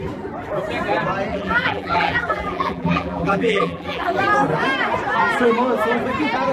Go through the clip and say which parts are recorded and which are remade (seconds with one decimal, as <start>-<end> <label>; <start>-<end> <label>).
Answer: 0.0-1.3 recorded; 1.3-4.2 remade; 4.2-6.5 recorded